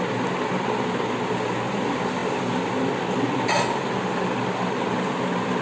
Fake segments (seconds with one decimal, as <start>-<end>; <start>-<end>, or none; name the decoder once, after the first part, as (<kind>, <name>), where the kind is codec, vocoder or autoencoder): none